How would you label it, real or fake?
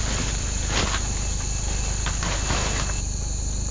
real